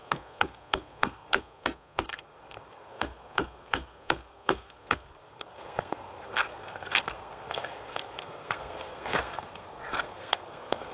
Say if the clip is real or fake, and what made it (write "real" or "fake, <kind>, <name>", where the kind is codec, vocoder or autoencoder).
fake, codec, SNAC